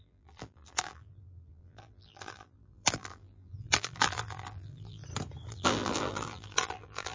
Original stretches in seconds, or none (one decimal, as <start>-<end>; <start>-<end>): 5.0-5.5